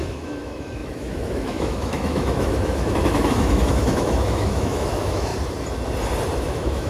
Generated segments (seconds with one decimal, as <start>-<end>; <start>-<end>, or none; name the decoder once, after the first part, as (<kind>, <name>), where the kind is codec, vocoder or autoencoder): 0.0-5.3 (autoencoder, DAC-VAE); 6.4-6.9

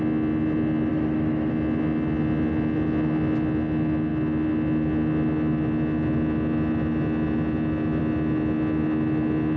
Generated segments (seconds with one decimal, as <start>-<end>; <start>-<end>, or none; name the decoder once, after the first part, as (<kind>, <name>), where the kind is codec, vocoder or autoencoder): 0.9-1.5 (autoencoder, DAC-VAE)

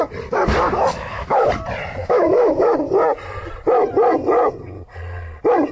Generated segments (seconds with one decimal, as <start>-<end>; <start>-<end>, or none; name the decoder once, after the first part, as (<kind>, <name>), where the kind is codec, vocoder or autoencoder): 0.9-1.5 (autoencoder, DAC-VAE); 2.0-2.7